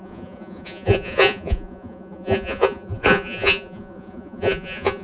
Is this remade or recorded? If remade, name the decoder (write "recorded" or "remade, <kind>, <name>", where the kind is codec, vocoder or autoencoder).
remade, vocoder, Vocos